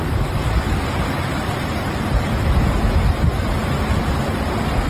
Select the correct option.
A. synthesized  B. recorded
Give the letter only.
B